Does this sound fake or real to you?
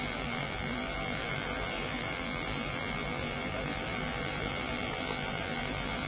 fake